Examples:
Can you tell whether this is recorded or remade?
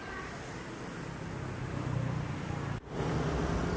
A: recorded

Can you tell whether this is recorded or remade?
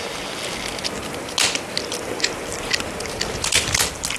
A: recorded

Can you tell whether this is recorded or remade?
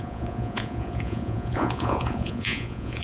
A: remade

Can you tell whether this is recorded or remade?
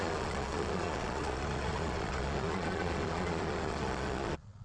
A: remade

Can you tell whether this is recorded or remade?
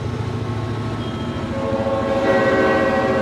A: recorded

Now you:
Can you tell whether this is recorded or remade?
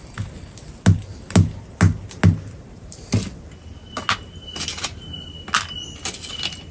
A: recorded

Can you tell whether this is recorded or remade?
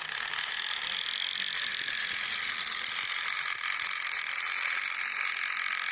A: recorded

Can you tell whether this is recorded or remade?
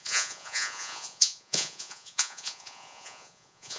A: remade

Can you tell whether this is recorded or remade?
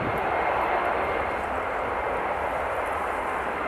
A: recorded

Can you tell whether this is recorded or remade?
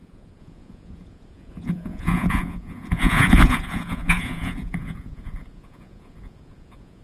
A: remade